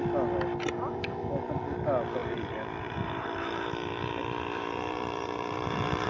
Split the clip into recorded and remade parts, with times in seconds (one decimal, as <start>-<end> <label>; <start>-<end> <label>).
0.0-2.2 recorded; 2.2-6.1 remade